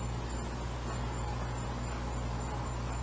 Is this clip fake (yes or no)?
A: no